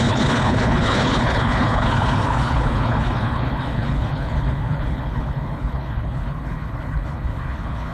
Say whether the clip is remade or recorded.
remade